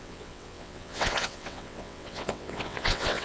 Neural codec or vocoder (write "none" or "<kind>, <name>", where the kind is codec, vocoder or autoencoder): vocoder, WaveNeXt